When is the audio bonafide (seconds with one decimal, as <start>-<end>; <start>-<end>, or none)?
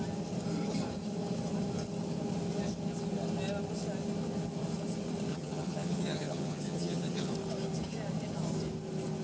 0.0-5.3; 7.3-9.2